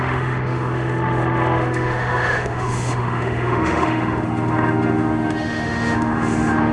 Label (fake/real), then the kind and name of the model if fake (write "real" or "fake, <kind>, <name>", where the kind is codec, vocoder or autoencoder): fake, autoencoder, DAC-VAE